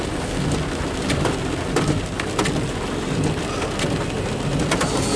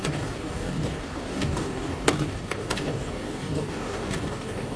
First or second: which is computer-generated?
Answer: second